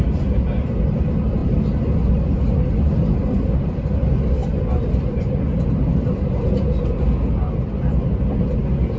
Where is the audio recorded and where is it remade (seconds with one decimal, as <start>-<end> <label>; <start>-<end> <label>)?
0.0-9.0 recorded